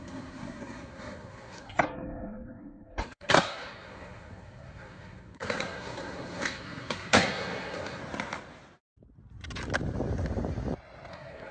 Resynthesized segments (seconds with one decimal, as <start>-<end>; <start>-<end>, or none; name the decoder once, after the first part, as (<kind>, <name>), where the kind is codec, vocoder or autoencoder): 0.0-8.0 (codec, SNAC); 11.1-11.5